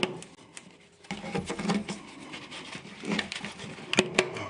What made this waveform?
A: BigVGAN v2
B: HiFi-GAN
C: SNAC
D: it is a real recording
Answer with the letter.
D